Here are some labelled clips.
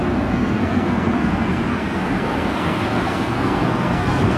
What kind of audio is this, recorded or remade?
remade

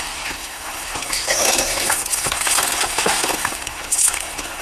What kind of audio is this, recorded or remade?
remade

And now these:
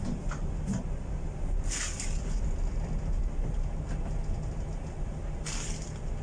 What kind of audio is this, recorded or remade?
recorded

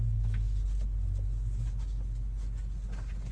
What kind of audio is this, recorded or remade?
recorded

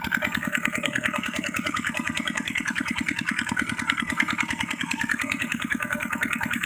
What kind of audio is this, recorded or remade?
remade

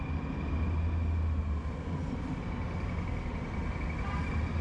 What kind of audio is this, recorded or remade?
recorded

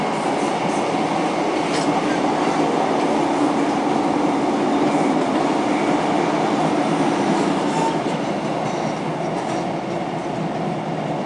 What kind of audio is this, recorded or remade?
recorded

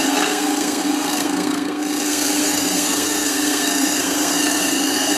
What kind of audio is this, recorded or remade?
remade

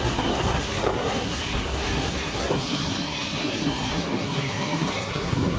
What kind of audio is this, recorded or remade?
remade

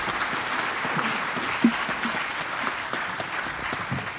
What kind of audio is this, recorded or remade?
recorded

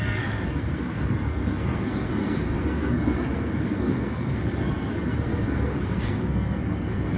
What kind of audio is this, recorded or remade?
remade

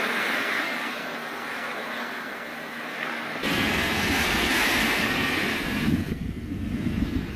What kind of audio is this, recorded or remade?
remade